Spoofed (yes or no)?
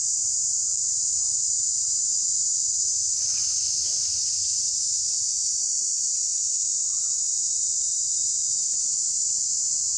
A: yes